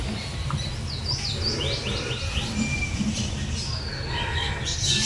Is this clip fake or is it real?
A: real